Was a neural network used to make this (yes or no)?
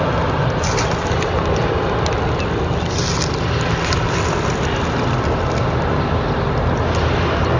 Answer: no